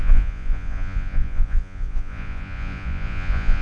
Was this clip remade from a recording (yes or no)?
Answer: yes